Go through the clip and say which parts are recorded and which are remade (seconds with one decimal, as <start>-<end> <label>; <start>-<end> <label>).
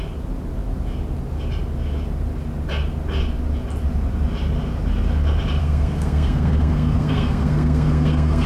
0.0-5.6 recorded; 5.6-8.5 remade